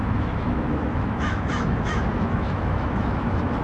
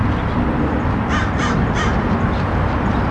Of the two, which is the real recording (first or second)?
second